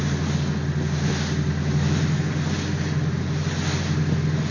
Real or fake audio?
real